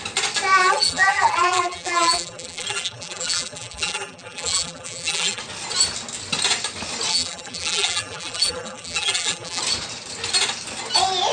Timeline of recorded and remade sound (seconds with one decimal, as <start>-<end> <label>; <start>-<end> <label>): 0.0-0.6 recorded; 0.6-5.4 remade; 5.4-7.1 recorded; 7.1-9.6 remade; 9.6-11.3 recorded